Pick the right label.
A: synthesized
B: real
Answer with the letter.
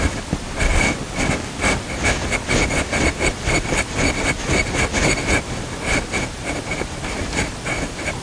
B